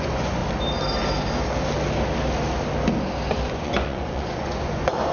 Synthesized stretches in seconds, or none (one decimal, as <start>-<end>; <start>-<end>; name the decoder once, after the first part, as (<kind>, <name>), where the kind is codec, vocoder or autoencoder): 0.0-0.4 (vocoder, Vocos); 3.5-5.1

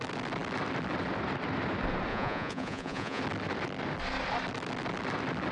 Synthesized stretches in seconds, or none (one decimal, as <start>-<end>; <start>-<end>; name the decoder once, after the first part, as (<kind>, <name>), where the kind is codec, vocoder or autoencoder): 2.1-3.2 (vocoder, Vocos)

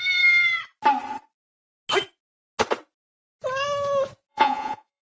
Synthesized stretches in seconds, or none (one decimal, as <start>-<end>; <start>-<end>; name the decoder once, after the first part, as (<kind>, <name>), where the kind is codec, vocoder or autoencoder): 4.3-5.0 (vocoder, Vocos)

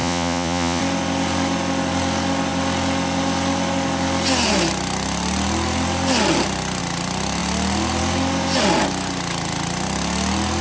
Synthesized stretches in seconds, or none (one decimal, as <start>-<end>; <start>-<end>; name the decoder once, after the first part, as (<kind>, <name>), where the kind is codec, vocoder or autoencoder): 0.0-0.8 (vocoder, Vocos)

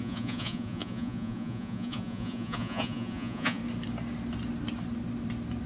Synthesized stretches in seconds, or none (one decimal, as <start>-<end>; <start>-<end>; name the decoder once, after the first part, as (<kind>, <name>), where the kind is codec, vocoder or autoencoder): 0.0-3.6 (vocoder, Vocos)

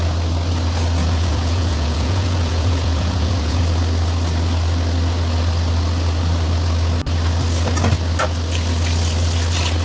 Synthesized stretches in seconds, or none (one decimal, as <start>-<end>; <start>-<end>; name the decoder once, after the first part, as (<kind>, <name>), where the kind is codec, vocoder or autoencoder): 1.0-3.6 (vocoder, Vocos)

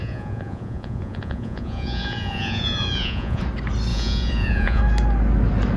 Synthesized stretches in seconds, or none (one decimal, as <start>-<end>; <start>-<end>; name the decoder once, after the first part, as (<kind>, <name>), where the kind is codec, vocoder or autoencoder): 0.0-3.4 (vocoder, Vocos); 3.9-4.8